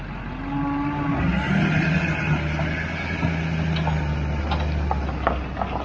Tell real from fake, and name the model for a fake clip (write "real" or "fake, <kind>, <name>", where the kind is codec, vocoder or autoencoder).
real